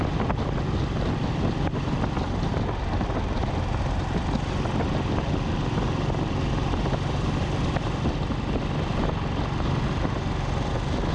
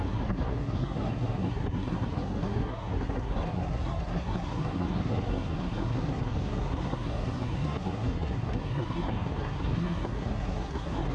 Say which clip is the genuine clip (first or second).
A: first